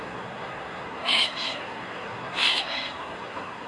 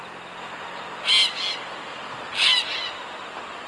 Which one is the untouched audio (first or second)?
second